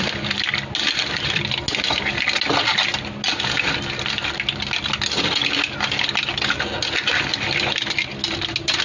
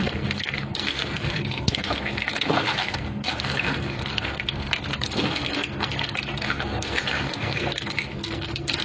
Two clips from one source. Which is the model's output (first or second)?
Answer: second